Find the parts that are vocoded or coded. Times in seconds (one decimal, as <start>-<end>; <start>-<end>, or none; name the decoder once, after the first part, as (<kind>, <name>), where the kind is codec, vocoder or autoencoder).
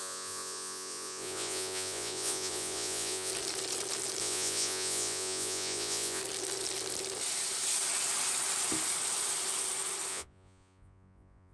0.0-3.3 (vocoder, Vocos); 4.2-6.2; 10.1-11.5